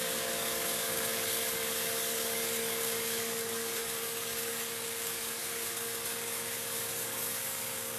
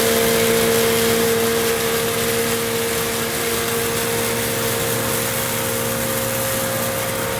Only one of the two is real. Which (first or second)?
second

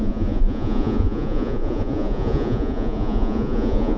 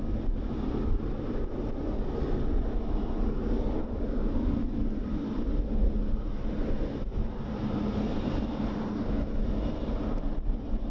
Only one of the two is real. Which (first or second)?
second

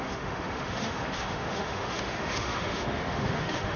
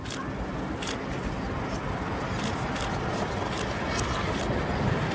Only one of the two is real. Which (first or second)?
second